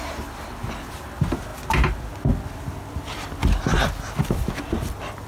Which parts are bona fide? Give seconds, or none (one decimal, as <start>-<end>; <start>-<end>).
0.0-5.3